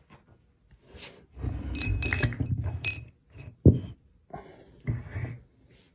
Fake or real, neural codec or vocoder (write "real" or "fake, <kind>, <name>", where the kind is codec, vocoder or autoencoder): real